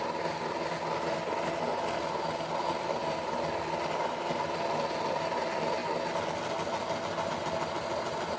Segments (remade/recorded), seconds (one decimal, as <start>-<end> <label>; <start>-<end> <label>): 0.0-8.4 recorded